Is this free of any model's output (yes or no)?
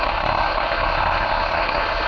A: no